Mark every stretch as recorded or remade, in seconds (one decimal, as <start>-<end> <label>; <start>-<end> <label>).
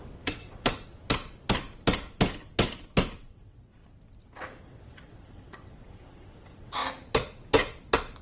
0.0-1.0 remade; 1.0-3.2 recorded; 3.2-3.7 remade; 3.7-4.6 recorded; 4.6-6.8 remade; 6.8-8.2 recorded